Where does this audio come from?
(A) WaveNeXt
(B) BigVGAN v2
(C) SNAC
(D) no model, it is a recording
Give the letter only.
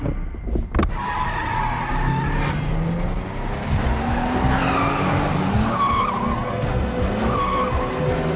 D